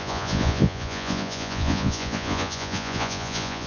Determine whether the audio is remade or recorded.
remade